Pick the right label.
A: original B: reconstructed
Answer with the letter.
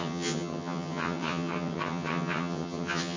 B